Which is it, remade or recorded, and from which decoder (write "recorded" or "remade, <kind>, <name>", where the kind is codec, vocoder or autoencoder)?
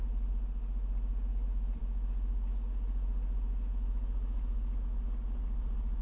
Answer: recorded